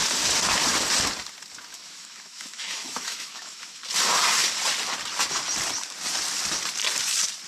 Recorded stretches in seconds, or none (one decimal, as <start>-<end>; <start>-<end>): 0.0-1.7; 3.8-7.5